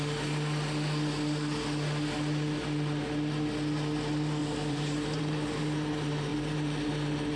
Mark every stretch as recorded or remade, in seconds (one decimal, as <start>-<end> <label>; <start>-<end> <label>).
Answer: 0.0-4.4 recorded; 4.4-5.6 remade; 5.6-6.3 recorded; 6.3-6.9 remade; 6.9-7.4 recorded